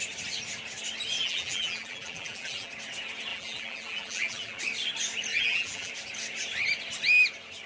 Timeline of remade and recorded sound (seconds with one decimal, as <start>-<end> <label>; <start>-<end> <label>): 0.0-1.2 recorded; 1.2-2.7 remade; 2.7-3.3 recorded; 3.3-4.6 remade; 4.6-5.3 recorded; 5.3-5.9 remade; 5.9-7.7 recorded

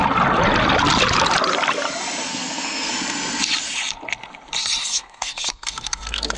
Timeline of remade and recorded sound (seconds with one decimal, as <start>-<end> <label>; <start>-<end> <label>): 0.0-2.3 recorded; 2.3-2.9 remade; 2.9-4.8 recorded; 4.8-6.4 remade

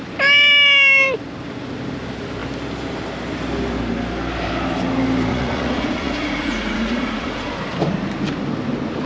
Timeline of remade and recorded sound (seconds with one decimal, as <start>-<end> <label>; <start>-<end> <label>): 0.0-5.3 recorded; 5.3-7.5 remade; 7.5-9.1 recorded

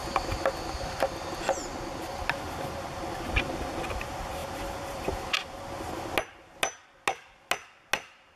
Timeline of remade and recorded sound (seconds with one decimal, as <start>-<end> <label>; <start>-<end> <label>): 0.0-8.4 recorded

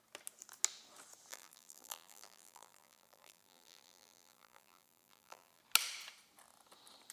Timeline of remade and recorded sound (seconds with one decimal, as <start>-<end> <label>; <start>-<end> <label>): 0.0-1.3 recorded; 1.3-5.6 remade; 5.6-7.1 recorded

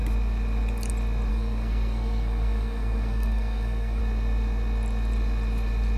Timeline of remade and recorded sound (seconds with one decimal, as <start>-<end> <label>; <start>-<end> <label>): 0.0-1.3 recorded; 1.3-4.0 remade; 4.0-6.0 recorded